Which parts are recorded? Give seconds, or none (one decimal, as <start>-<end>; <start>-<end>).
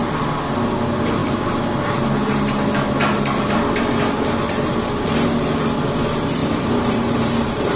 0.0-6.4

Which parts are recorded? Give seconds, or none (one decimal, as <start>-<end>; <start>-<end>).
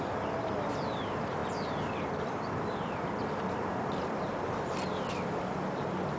none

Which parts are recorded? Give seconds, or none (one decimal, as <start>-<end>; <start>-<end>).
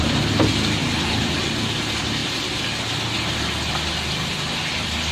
0.0-0.8; 1.4-5.1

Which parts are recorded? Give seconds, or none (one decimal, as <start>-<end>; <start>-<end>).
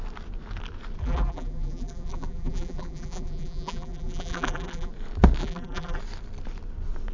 0.0-1.0; 4.9-5.4; 6.0-7.1